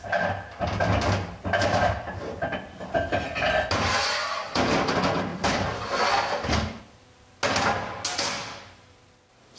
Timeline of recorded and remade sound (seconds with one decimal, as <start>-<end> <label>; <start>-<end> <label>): 0.0-4.3 recorded; 4.3-4.8 remade; 4.8-5.3 recorded; 5.3-6.8 remade; 6.8-9.6 recorded